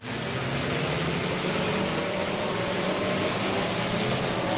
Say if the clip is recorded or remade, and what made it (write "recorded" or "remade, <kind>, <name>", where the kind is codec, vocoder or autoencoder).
recorded